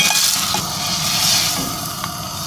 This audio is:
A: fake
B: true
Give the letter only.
B